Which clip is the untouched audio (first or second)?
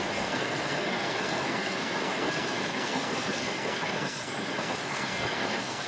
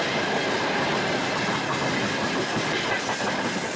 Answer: second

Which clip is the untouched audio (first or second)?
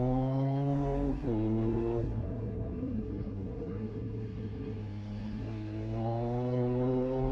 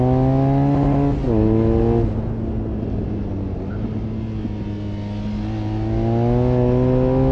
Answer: second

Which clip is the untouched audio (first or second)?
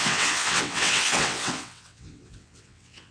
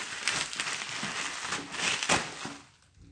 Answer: second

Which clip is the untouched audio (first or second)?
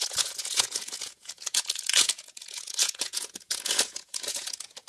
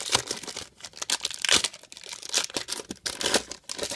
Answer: second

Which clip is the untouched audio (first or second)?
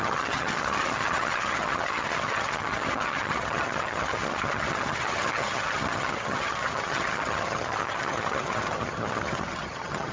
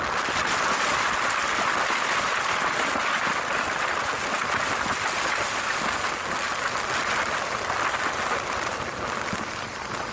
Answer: second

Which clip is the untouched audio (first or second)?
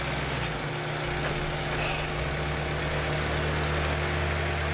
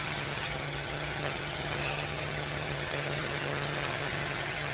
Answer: first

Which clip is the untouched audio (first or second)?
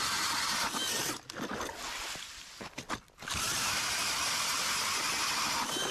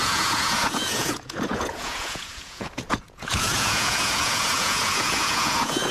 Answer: first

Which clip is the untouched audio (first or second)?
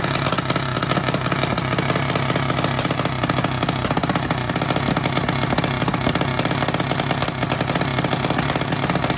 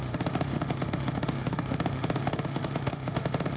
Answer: first